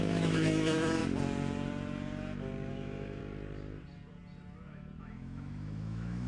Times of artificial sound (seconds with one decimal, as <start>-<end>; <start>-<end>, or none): 0.0-1.0; 2.7-3.2; 5.0-6.3

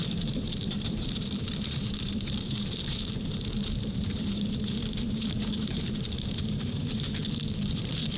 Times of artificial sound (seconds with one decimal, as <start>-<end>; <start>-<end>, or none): 0.0-7.2; 7.7-8.2

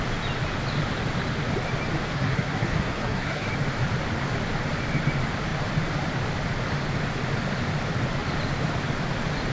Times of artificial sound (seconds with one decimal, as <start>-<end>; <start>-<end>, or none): 2.1-3.5